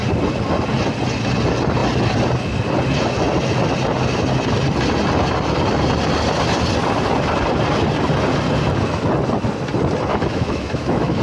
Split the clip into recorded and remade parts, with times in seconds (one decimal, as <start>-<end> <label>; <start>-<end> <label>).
0.0-10.1 recorded; 10.1-11.2 remade